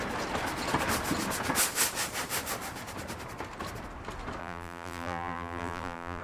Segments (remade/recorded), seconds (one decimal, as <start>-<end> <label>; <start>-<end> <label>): 0.0-4.4 recorded; 4.4-6.2 remade